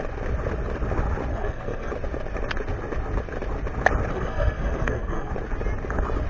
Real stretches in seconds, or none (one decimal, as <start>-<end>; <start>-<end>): 0.0-1.3; 1.9-4.1; 5.3-6.3